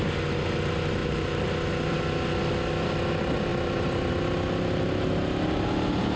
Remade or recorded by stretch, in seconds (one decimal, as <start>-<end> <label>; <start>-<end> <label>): 0.0-1.0 recorded; 1.0-1.5 remade; 1.5-3.5 recorded; 3.5-4.1 remade; 4.1-6.2 recorded